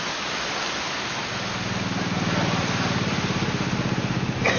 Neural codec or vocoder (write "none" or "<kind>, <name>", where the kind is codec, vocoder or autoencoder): none